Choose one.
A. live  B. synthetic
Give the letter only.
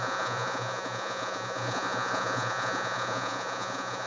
B